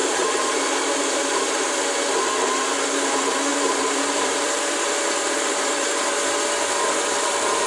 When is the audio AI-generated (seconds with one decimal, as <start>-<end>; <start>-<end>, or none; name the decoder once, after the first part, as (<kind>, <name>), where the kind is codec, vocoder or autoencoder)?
0.0-1.8 (vocoder, BigVGAN v2); 3.5-5.9